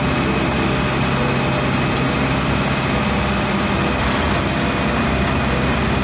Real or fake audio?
real